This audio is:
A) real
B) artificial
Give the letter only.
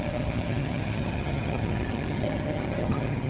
B